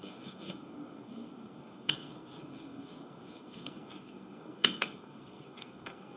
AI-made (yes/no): yes